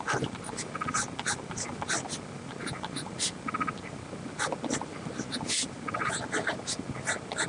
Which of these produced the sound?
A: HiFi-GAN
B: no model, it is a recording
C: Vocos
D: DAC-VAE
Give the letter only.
B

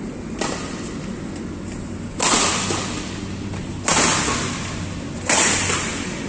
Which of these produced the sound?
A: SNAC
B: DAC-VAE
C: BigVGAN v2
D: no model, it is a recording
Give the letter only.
D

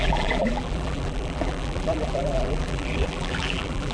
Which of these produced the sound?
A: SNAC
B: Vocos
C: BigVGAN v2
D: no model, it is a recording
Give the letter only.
C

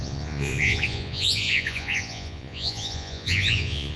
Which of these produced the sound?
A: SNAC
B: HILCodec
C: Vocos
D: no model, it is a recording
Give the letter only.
C